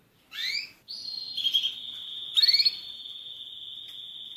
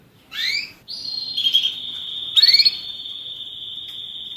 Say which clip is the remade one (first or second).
second